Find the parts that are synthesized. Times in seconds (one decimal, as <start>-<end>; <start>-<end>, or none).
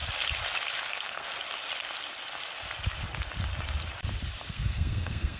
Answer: 0.9-1.3; 4.5-5.4